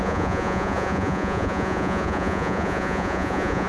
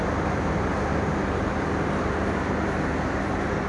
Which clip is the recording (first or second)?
second